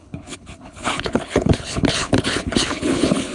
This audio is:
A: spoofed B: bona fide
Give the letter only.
A